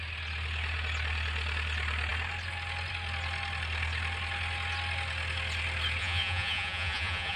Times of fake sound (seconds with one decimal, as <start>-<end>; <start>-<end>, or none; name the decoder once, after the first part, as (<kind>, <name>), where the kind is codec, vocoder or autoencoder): 6.0-7.4 (vocoder, Vocos)